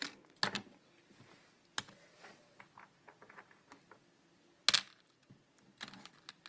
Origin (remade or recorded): recorded